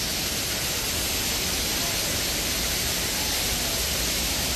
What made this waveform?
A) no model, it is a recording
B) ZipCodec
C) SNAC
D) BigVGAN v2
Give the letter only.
A